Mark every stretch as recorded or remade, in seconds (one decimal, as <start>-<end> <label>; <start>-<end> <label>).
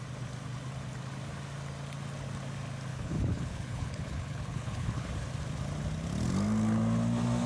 0.0-2.9 recorded; 2.9-5.1 remade; 5.1-7.5 recorded